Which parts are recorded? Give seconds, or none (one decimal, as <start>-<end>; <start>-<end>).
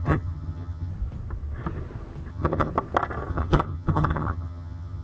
0.9-2.3; 2.7-3.3